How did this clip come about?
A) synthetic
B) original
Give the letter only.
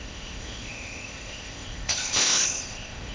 A